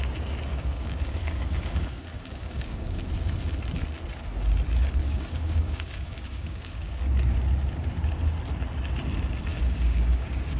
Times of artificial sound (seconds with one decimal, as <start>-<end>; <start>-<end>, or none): 0.5-3.0; 5.0-7.0; 9.5-10.6